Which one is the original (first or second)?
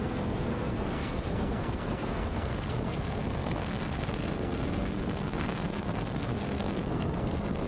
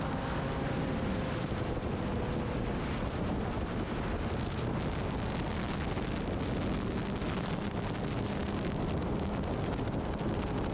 second